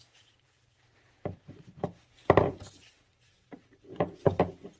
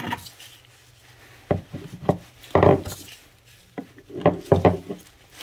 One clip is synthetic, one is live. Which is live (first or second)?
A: second